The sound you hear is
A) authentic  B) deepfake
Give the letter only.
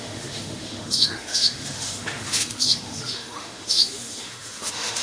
B